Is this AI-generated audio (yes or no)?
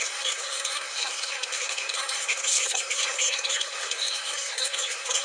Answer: yes